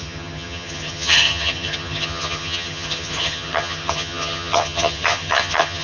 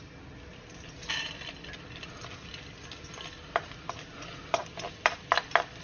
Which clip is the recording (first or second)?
second